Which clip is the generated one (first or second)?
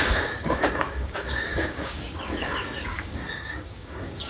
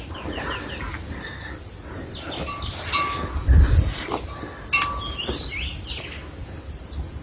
first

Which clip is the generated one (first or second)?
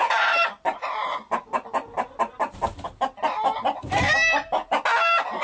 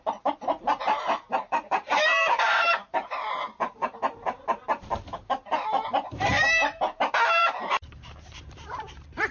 second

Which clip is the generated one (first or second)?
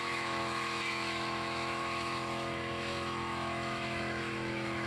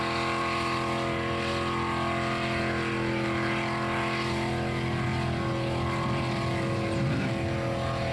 first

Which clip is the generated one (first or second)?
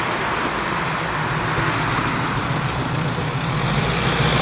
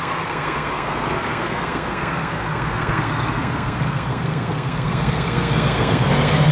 second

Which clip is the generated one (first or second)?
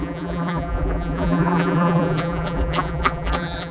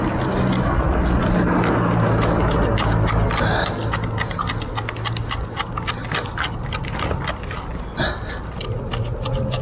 first